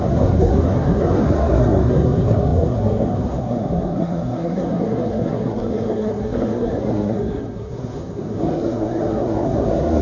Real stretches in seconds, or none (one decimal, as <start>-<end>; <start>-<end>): none